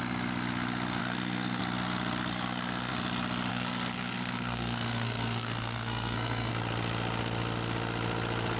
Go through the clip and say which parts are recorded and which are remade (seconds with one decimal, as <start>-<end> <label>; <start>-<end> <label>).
0.0-1.0 recorded; 1.0-1.6 remade; 1.6-2.3 recorded; 2.3-2.9 remade; 2.9-3.5 recorded; 3.5-6.5 remade; 6.5-8.6 recorded